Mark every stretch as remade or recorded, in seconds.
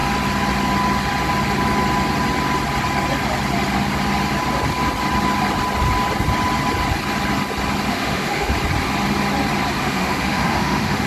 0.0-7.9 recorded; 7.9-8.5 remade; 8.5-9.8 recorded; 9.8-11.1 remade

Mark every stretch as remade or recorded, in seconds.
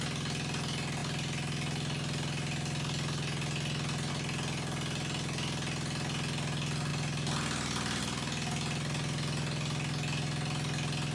0.0-11.1 recorded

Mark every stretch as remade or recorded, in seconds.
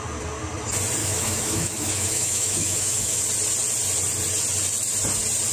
0.0-1.0 recorded; 1.0-3.2 remade; 3.2-5.5 recorded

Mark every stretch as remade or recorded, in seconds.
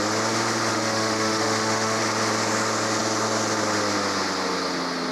0.0-0.7 recorded; 0.7-2.0 remade; 2.0-5.1 recorded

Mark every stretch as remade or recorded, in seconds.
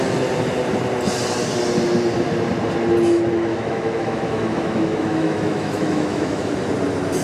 0.0-3.5 recorded; 3.5-6.5 remade; 6.5-7.2 recorded